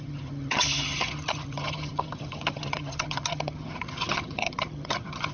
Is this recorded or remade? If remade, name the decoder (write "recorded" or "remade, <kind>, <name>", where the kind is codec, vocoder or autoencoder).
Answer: remade, vocoder, HiFi-GAN